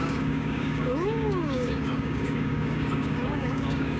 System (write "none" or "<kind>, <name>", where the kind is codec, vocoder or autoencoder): codec, DAC